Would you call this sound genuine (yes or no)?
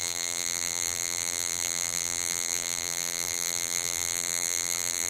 no